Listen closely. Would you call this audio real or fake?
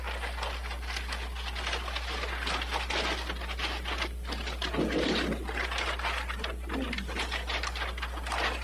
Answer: real